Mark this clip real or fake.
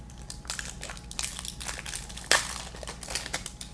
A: real